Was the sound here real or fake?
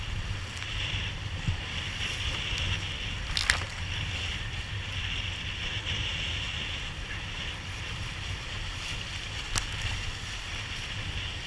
real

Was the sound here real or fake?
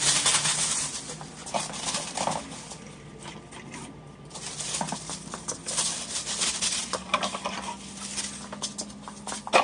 real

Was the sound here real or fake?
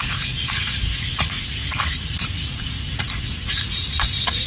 fake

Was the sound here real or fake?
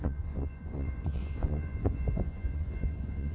fake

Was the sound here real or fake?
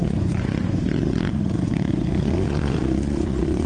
fake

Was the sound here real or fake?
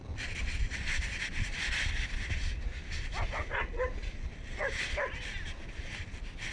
real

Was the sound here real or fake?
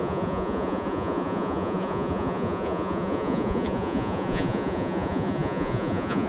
fake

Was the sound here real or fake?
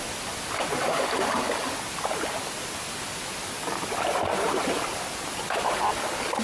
real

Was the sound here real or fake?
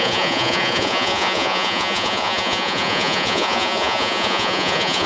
fake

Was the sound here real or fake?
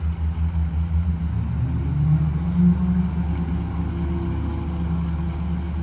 real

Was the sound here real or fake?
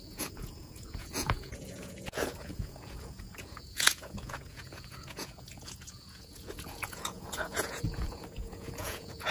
fake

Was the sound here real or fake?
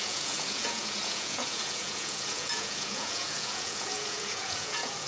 fake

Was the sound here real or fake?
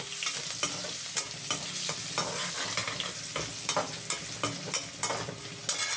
real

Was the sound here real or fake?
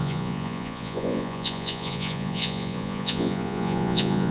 fake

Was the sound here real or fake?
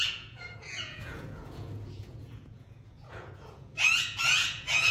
fake